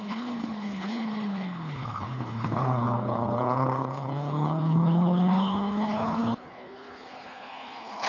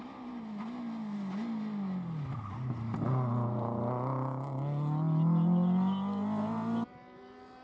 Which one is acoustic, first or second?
second